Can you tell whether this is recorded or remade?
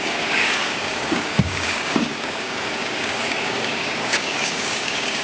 remade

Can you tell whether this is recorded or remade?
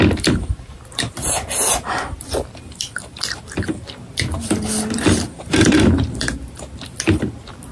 remade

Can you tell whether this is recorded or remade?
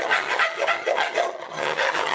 remade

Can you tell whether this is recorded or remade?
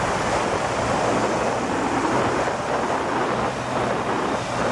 recorded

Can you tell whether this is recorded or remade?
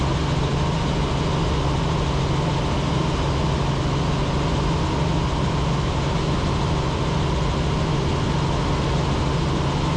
recorded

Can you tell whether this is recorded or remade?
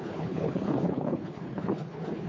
remade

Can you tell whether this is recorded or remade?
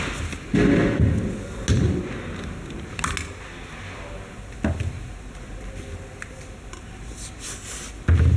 recorded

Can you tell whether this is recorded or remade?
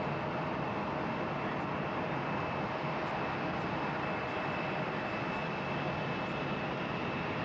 recorded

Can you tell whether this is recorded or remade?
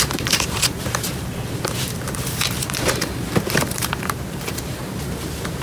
remade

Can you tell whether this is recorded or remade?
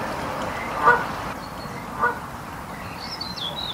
recorded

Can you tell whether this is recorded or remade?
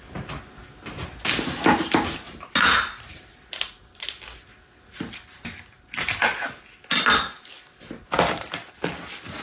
recorded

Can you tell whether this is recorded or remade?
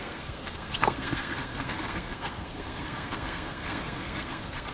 remade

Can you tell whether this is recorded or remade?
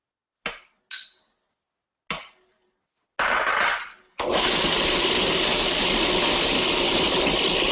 recorded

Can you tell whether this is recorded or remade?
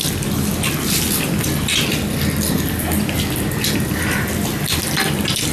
recorded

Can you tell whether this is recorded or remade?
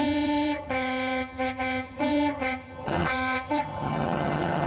remade